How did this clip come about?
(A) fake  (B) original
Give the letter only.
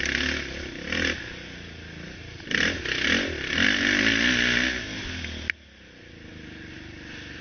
B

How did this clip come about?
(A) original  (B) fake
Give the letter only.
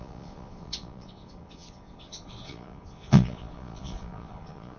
B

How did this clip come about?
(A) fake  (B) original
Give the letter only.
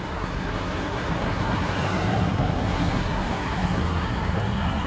A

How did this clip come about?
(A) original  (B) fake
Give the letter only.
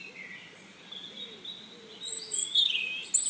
A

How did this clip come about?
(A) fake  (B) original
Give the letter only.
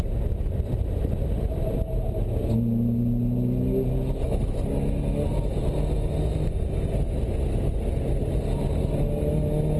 B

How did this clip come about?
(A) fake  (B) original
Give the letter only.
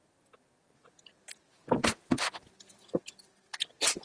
B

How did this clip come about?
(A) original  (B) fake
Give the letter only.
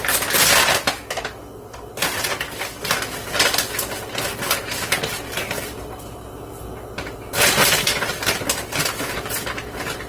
A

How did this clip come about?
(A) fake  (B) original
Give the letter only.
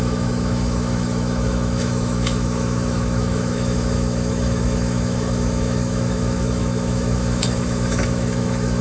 A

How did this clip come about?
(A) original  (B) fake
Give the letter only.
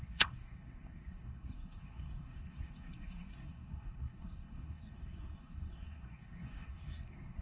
B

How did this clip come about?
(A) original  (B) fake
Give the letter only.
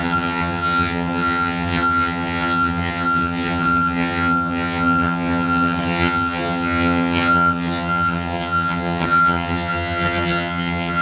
B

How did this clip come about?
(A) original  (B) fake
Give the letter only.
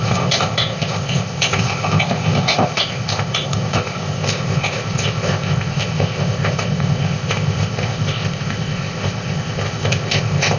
B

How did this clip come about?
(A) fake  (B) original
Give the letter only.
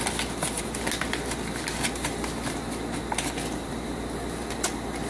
B